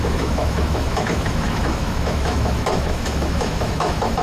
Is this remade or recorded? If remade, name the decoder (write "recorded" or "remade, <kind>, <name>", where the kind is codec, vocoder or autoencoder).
remade, autoencoder, DAC-VAE